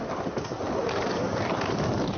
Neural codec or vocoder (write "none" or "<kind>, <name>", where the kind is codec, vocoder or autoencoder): vocoder, BigVGAN v2